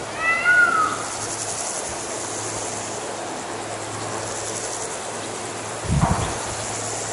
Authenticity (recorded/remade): recorded